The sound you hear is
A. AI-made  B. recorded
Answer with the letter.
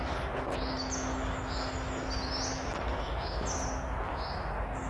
B